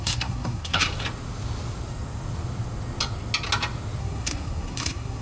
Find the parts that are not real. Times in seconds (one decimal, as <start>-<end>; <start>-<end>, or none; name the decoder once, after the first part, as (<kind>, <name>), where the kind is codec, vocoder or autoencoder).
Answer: 0.0-0.9 (codec, SNAC); 4.0-5.2